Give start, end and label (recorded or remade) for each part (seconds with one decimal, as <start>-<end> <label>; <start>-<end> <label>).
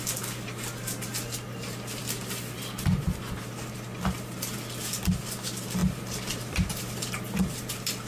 0.0-5.8 recorded; 5.8-7.4 remade; 7.4-8.1 recorded